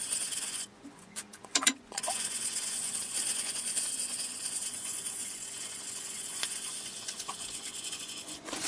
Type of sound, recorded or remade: remade